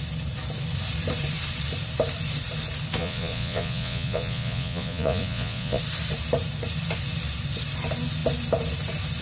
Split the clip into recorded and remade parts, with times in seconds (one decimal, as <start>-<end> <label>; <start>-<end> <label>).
0.0-3.0 recorded; 3.0-5.8 remade; 5.8-9.2 recorded